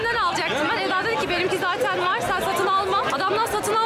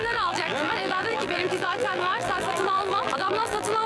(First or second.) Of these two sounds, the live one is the first